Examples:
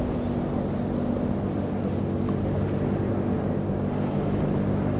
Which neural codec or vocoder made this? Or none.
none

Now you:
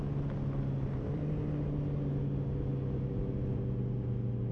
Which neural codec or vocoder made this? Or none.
none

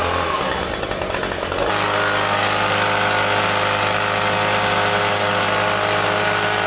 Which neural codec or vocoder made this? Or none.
none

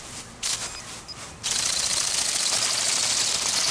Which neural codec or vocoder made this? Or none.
none